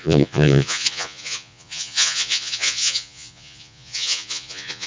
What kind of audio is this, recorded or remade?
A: remade